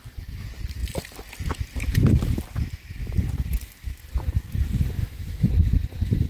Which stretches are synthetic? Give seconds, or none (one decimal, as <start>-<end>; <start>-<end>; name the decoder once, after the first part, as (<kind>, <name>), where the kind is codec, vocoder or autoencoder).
5.0-5.5 (autoencoder, DAC-VAE)